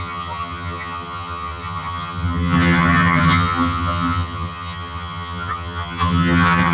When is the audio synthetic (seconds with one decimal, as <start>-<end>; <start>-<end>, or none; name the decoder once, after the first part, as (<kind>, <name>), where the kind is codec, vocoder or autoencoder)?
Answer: 0.0-6.7 (vocoder, HiFi-GAN)